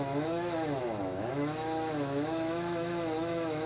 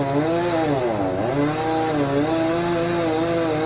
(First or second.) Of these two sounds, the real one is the second